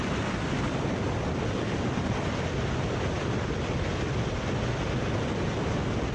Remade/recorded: recorded